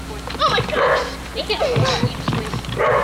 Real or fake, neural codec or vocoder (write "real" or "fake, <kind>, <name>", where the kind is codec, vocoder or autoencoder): real